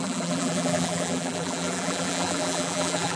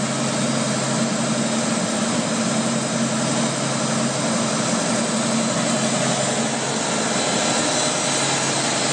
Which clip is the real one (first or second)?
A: second